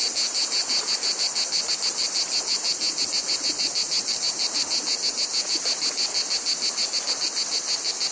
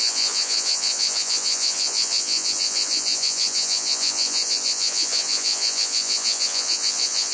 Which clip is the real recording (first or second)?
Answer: first